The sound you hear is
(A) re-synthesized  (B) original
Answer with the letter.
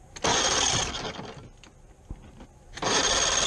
B